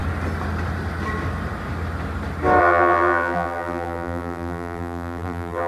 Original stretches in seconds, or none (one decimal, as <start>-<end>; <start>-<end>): 0.0-2.6